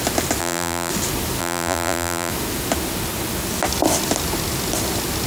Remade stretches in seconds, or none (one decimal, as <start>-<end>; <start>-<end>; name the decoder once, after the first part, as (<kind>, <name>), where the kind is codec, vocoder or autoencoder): 0.4-0.9 (vocoder, BigVGAN v2); 1.4-2.3